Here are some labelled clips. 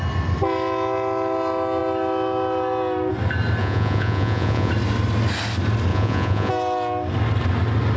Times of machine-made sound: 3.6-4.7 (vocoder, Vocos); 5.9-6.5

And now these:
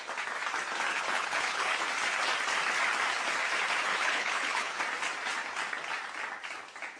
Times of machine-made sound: 0.9-1.8 (codec, HILCodec); 3.9-4.8

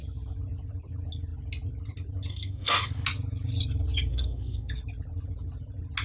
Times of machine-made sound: 2.3-2.9 (codec, SNAC); 4.1-4.7

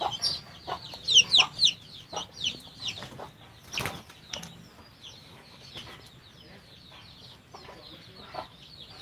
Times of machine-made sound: 5.2-5.7 (autoencoder, DAC-VAE)